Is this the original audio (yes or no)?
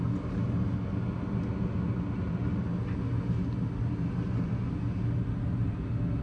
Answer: yes